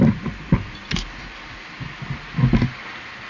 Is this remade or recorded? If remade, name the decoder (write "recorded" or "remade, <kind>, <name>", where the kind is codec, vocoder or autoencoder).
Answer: recorded